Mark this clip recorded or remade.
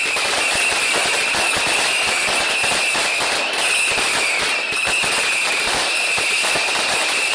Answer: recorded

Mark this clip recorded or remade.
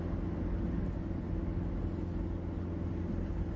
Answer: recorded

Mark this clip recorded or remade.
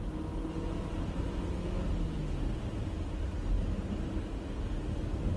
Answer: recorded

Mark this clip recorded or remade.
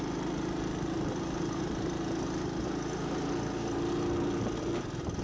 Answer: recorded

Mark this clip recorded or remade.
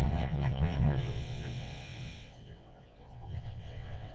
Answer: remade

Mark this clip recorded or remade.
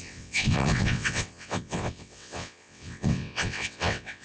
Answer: remade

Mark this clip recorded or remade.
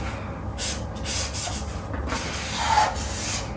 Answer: recorded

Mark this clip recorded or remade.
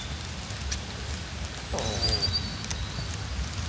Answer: recorded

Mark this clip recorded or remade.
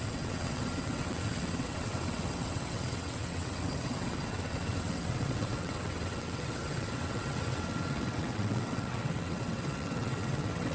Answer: remade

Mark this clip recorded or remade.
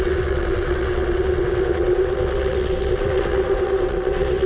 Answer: remade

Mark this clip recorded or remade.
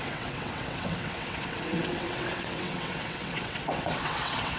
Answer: remade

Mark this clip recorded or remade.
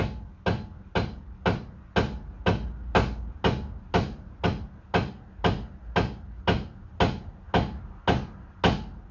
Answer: recorded